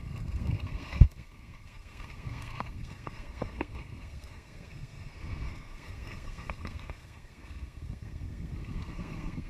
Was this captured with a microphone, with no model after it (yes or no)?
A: no